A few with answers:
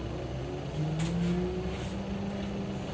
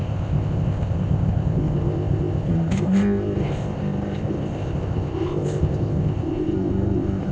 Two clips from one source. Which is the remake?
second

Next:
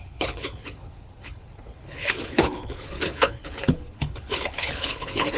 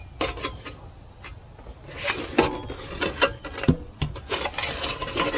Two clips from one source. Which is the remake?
first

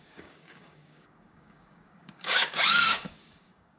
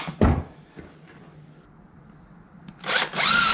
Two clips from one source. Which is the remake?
first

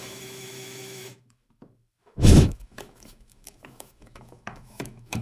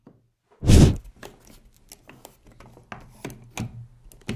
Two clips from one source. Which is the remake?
first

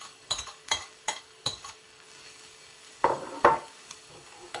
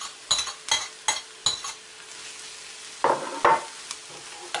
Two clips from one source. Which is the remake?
first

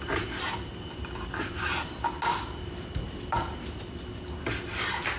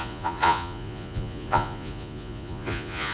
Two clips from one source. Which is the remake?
second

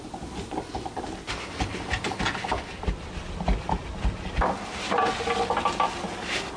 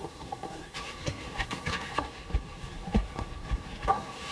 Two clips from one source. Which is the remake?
second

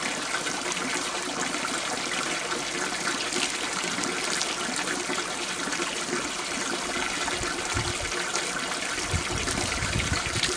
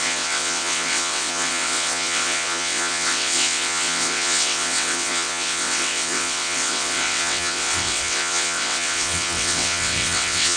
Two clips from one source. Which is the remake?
second